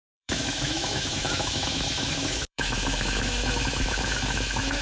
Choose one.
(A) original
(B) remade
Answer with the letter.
B